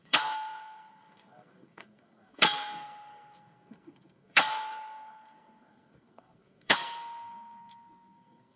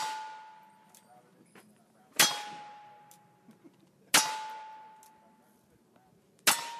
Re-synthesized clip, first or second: first